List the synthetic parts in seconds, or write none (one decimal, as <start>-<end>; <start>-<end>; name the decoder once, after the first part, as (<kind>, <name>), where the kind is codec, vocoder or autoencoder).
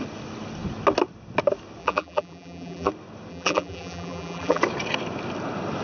1.8-2.9 (vocoder, BigVGAN v2); 3.3-4.6